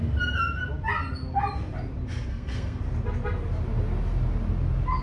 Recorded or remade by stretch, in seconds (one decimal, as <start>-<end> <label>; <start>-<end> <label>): 0.0-2.3 recorded; 2.3-2.8 remade; 2.8-5.0 recorded